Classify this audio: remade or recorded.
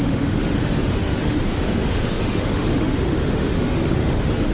remade